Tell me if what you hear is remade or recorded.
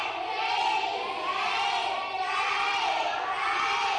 remade